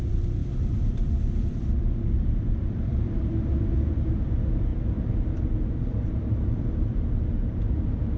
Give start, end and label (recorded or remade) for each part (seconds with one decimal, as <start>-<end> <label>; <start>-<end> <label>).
0.0-8.2 remade